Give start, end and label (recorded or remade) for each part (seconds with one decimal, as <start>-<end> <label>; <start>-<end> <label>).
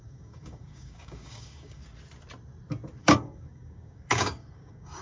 0.0-1.8 remade; 1.8-3.0 recorded; 3.0-5.0 remade